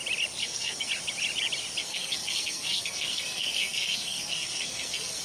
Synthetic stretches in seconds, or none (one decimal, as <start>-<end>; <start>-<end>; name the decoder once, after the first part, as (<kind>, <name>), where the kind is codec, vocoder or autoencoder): 0.4-0.9 (codec, SNAC); 1.8-5.2